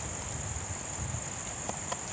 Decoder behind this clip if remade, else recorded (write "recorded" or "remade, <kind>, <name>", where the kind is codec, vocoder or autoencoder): recorded